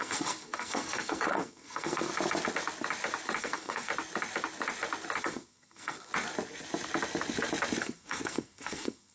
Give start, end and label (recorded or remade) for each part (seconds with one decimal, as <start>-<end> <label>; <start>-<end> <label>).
0.0-2.1 remade; 2.1-3.4 recorded; 3.4-3.9 remade; 3.9-5.2 recorded; 5.2-6.1 remade; 6.1-7.8 recorded; 7.8-9.1 remade